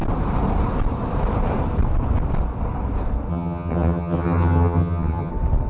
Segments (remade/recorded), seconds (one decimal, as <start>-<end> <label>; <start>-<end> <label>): 0.0-3.3 recorded; 3.3-5.3 remade; 5.3-5.7 recorded